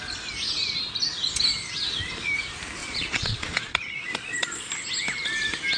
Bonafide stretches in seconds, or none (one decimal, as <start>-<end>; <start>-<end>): 0.0-2.8; 4.7-5.8